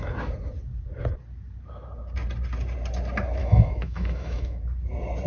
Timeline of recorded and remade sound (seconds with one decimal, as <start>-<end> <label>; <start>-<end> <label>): 0.0-3.4 recorded; 3.4-4.6 remade; 4.6-5.3 recorded